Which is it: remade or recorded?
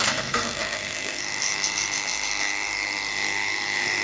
remade